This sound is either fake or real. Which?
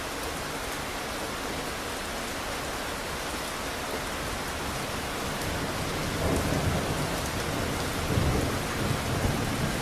real